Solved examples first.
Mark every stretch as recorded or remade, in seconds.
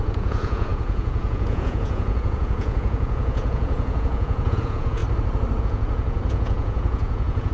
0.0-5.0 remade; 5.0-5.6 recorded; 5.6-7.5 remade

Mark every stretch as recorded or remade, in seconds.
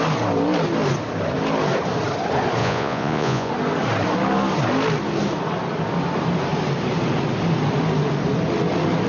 0.0-2.6 recorded; 2.6-3.5 remade; 3.5-9.1 recorded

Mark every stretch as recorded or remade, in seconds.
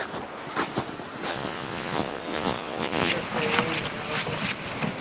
0.0-1.3 recorded; 1.3-3.1 remade; 3.1-5.0 recorded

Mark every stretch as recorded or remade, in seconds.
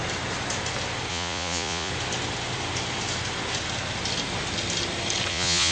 0.0-1.1 recorded; 1.1-1.9 remade; 1.9-5.3 recorded; 5.3-5.7 remade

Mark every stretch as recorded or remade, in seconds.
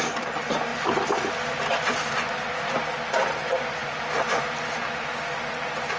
0.0-6.0 recorded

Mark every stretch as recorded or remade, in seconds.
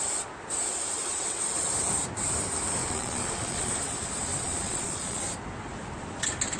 0.0-2.8 recorded; 2.8-3.7 remade; 3.7-4.3 recorded; 4.3-5.2 remade; 5.2-6.6 recorded